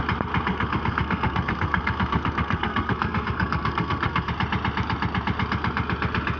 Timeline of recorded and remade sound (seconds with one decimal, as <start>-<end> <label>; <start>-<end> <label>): 0.0-0.5 recorded; 0.5-4.3 remade; 4.3-6.4 recorded